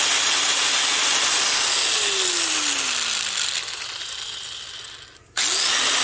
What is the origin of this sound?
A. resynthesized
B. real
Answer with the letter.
B